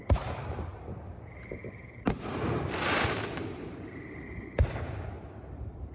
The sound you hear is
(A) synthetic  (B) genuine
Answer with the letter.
A